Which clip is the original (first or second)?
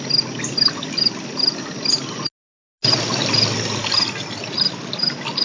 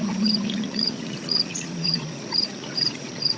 first